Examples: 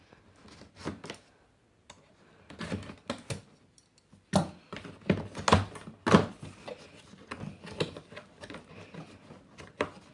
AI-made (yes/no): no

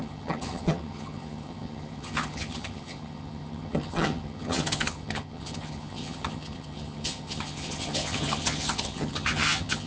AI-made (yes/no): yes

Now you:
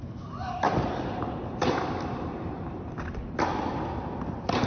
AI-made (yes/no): no